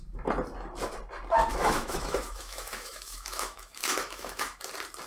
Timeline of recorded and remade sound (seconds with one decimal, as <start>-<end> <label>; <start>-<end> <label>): 0.0-1.5 recorded; 1.5-4.6 remade; 4.6-5.1 recorded